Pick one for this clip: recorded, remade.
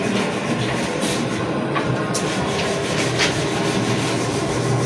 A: recorded